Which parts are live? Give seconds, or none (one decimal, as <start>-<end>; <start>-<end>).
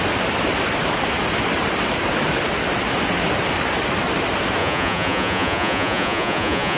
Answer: 0.0-4.6